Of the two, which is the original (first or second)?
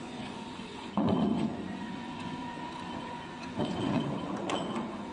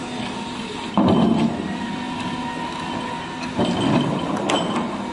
second